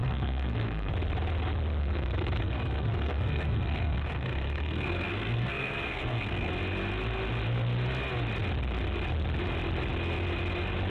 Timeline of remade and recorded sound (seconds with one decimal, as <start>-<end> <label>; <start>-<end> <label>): 0.0-0.9 remade; 0.9-1.8 recorded; 1.8-6.5 remade; 6.5-10.9 recorded